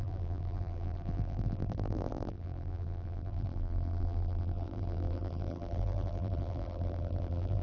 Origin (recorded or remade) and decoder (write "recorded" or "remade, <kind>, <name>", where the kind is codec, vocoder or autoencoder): remade, vocoder, BigVGAN v2